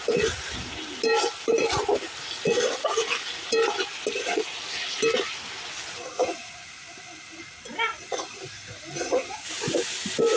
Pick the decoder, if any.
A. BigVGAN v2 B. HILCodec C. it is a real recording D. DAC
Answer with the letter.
C